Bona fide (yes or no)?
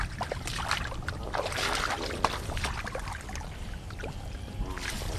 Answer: yes